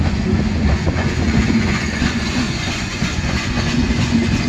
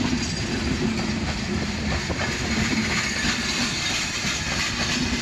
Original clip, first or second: second